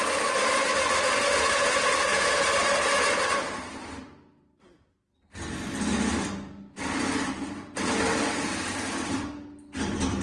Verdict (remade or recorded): recorded